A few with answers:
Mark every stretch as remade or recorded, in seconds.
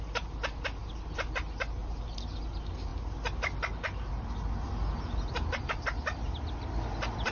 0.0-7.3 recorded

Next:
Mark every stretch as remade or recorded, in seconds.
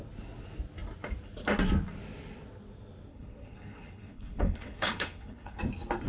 0.0-3.1 recorded; 3.1-5.6 remade; 5.6-6.1 recorded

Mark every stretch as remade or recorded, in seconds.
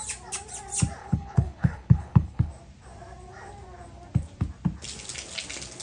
0.0-1.0 recorded; 1.0-2.5 remade; 2.5-5.8 recorded